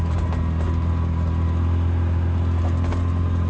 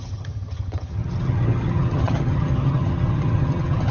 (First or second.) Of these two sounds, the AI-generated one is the second